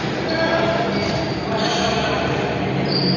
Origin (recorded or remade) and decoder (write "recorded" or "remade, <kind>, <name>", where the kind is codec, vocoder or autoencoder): recorded